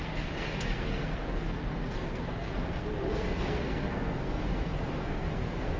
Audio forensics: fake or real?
fake